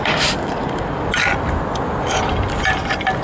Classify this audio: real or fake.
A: real